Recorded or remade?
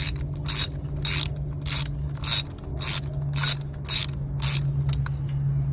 recorded